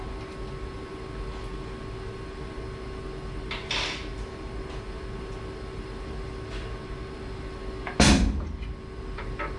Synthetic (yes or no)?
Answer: no